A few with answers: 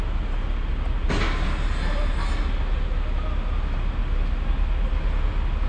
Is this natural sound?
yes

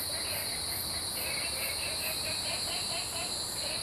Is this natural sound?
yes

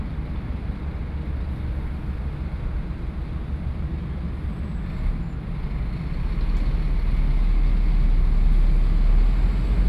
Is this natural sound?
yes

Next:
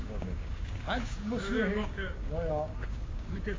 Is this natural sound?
no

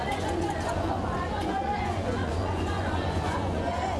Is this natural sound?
no